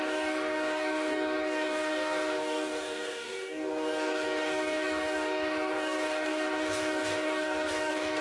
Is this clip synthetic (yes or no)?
yes